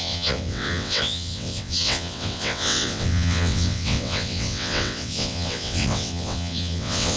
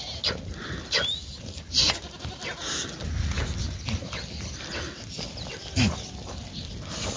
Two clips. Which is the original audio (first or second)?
second